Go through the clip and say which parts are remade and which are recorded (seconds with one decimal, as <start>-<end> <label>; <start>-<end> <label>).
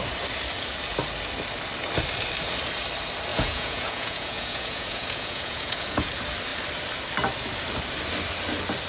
0.0-3.3 recorded; 3.3-6.1 remade; 6.1-8.9 recorded